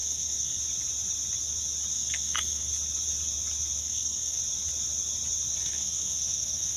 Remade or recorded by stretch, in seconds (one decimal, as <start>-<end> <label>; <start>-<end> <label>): 0.0-0.6 remade; 0.6-1.9 recorded; 1.9-2.7 remade; 2.7-3.8 recorded; 3.8-4.4 remade; 4.4-5.6 recorded; 5.6-6.8 remade